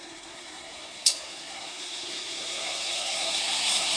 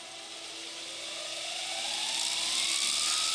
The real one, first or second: second